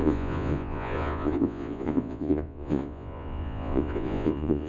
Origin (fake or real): fake